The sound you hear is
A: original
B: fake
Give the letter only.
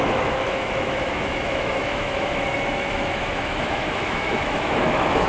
B